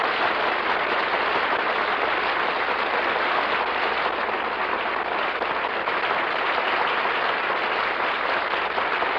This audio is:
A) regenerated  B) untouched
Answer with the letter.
B